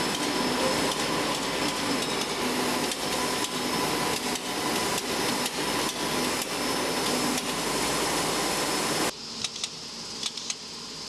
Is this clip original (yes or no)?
yes